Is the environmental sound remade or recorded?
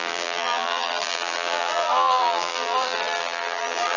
remade